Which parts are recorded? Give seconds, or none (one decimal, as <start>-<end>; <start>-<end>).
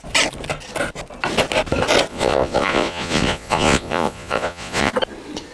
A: 0.0-2.1; 4.9-5.5